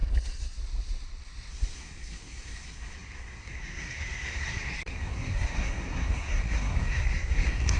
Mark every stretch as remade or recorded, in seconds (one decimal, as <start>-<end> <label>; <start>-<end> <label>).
0.0-1.5 recorded; 1.5-7.8 remade